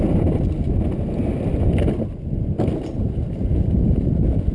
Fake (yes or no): no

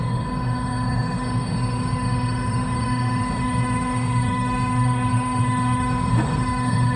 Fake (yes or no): yes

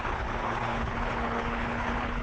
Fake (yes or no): yes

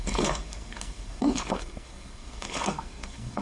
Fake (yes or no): yes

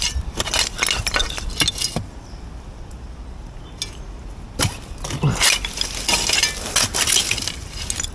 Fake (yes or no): no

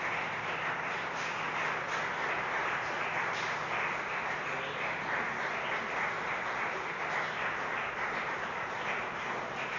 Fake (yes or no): no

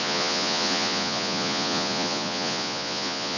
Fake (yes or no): yes